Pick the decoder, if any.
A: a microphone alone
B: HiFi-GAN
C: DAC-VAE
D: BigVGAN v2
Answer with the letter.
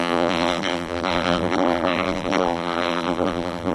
D